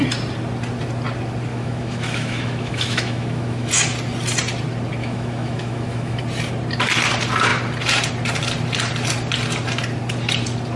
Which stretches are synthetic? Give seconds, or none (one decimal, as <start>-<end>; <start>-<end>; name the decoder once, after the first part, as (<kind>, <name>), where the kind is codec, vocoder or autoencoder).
1.5-3.7 (autoencoder, DAC-VAE); 5.0-6.2